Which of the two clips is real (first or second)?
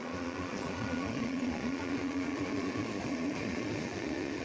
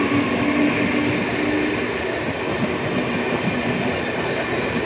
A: second